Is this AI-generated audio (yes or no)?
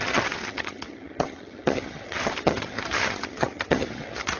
yes